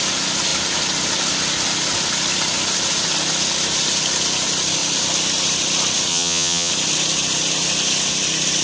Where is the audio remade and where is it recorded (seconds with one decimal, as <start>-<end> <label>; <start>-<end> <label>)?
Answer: 0.0-6.1 recorded; 6.1-6.7 remade; 6.7-8.6 recorded